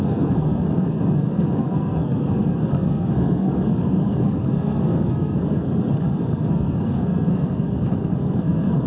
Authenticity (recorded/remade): remade